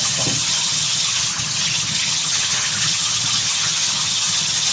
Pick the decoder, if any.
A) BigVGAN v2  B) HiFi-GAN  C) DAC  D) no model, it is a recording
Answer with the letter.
B